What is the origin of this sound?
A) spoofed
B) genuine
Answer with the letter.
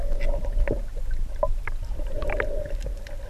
B